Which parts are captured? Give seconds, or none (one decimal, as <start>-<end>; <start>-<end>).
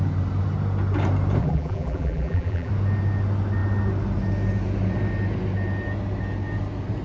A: 0.0-1.4; 2.7-7.0